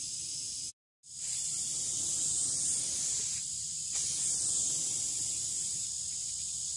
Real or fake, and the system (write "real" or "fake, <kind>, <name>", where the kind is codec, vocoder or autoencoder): real